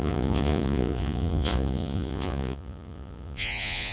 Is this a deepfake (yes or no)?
yes